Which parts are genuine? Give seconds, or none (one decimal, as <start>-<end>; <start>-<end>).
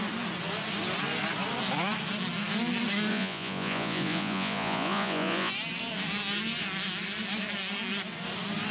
0.0-3.1; 5.5-8.7